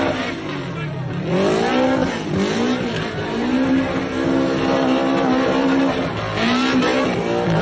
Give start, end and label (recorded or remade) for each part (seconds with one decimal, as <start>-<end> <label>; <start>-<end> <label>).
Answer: 0.0-7.6 recorded